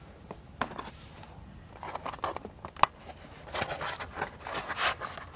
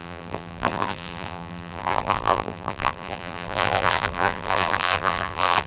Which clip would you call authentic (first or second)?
first